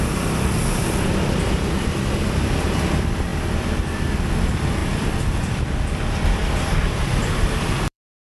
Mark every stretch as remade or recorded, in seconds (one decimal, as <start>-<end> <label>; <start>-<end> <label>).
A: 0.0-3.3 remade; 3.3-4.3 recorded; 4.3-8.4 remade